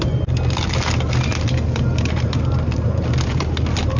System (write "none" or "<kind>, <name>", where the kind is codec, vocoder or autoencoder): none